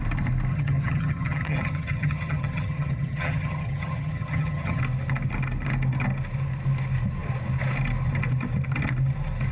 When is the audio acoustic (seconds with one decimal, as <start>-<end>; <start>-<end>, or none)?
0.0-0.5; 4.8-9.5

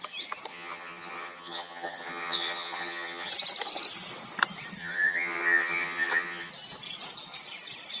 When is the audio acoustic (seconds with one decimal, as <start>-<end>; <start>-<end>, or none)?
0.0-0.5; 3.3-4.8; 6.5-8.0

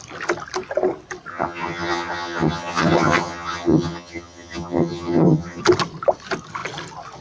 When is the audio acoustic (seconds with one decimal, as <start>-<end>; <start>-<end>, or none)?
0.0-1.3; 5.6-7.2